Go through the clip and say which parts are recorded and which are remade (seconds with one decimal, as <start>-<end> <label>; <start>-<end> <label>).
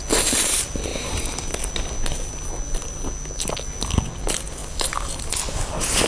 0.0-6.1 recorded